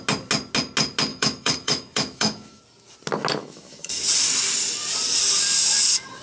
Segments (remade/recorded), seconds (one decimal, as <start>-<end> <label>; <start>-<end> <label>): 0.0-1.1 recorded; 1.1-2.6 remade; 2.6-3.4 recorded; 3.4-4.0 remade; 4.0-6.2 recorded